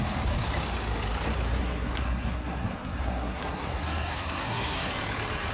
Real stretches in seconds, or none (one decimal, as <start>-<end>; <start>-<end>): 0.0-1.6; 4.9-5.5